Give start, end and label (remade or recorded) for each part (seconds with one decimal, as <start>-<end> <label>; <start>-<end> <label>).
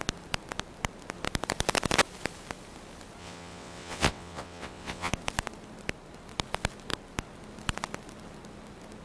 0.0-3.2 recorded; 3.2-5.1 remade; 5.1-9.0 recorded